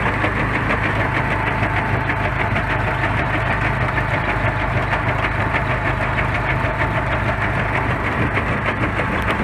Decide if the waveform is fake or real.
real